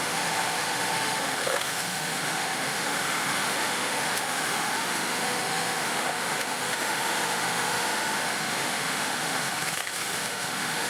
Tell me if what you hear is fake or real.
fake